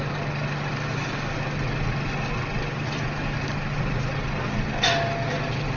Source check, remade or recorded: recorded